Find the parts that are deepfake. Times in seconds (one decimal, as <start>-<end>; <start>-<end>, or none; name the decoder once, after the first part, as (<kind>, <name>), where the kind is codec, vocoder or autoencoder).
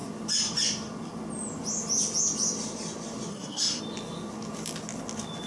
3.3-3.8 (codec, SNAC)